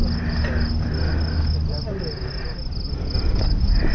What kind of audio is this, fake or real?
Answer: real